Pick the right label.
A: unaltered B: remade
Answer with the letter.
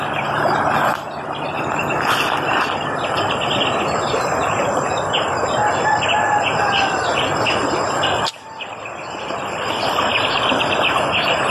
A